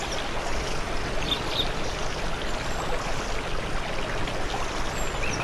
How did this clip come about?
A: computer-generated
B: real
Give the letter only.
B